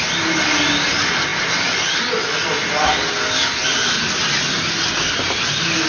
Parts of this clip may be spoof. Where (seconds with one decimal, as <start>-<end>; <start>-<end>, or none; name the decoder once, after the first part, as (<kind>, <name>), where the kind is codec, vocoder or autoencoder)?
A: none